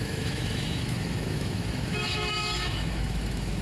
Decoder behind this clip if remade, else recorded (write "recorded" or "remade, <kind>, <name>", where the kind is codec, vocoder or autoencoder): remade, autoencoder, DAC-VAE